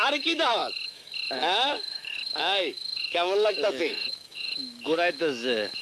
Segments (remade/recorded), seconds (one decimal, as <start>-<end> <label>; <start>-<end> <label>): 0.0-5.8 remade